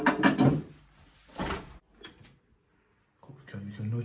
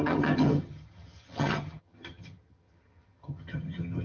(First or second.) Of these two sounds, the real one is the first